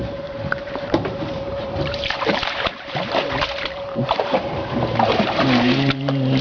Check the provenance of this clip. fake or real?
fake